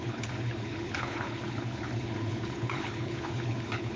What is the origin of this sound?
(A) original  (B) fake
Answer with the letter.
B